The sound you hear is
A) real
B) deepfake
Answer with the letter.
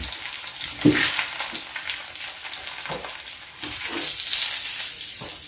A